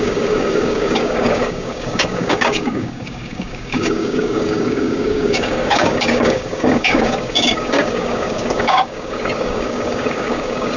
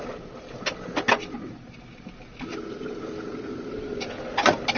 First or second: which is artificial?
first